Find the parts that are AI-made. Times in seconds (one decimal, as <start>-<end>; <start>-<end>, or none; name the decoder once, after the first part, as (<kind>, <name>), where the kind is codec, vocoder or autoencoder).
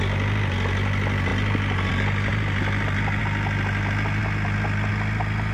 2.3-3.2 (vocoder, BigVGAN v2)